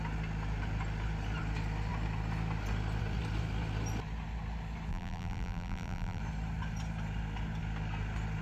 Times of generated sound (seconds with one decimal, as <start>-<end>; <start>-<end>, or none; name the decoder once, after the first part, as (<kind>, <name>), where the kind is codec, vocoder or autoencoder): 4.9-6.2 (vocoder, BigVGAN v2)

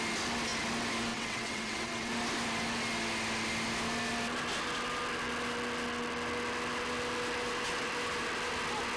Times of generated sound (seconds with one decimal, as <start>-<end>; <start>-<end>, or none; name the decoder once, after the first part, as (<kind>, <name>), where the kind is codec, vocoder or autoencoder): 1.1-2.1 (vocoder, WaveNeXt)

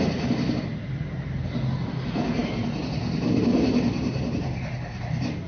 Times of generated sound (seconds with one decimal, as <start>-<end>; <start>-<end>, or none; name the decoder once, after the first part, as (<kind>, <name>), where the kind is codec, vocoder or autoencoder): 2.4-4.3 (vocoder, BigVGAN v2)